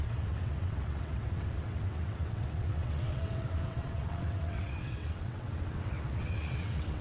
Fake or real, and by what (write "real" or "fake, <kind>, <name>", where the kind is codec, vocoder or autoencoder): fake, vocoder, WaveNeXt